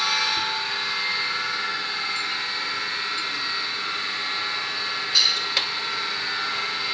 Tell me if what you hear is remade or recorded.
recorded